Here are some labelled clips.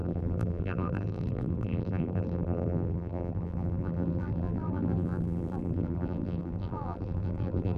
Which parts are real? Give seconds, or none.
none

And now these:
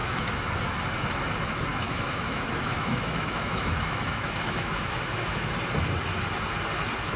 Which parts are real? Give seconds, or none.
0.5-1.7; 5.5-7.2

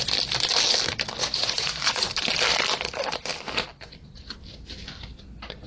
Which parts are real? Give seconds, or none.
0.0-1.2; 2.1-5.7

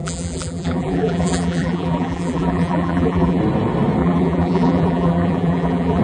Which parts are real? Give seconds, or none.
3.4-4.0